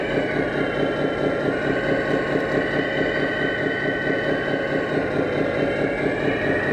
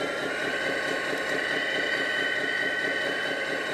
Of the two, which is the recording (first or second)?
first